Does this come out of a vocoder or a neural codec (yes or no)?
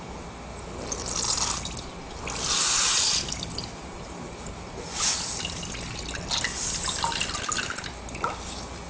no